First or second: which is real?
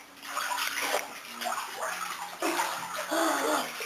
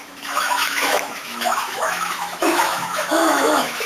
first